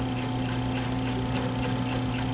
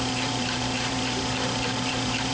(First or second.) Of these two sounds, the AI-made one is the second